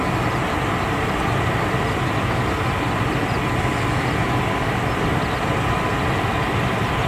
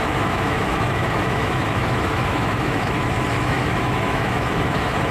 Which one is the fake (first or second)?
second